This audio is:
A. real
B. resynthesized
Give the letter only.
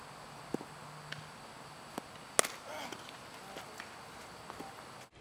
A